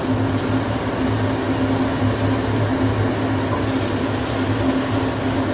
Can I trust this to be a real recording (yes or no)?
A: yes